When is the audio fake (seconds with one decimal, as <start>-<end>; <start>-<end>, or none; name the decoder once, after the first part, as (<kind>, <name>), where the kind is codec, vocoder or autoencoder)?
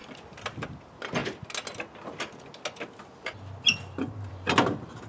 none